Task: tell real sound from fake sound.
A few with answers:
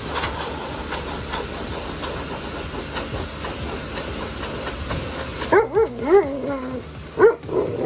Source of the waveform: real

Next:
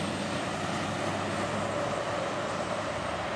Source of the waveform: real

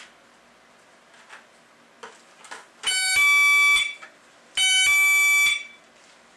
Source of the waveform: real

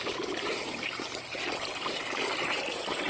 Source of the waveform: fake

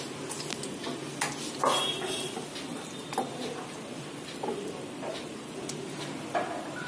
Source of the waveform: real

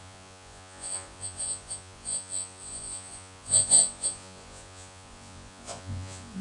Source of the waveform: fake